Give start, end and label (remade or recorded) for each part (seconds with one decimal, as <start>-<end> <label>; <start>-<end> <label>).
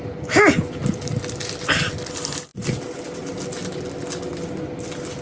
0.0-5.2 recorded